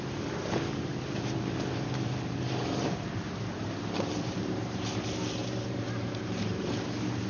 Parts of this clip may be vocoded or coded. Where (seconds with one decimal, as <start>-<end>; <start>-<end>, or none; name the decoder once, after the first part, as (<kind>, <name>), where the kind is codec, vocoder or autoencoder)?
0.0-7.3 (vocoder, BigVGAN v2)